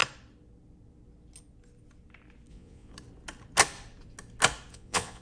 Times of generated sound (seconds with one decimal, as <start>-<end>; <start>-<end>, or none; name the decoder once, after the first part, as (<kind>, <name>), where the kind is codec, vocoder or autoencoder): 2.5-2.9 (vocoder, Vocos); 4.7-5.2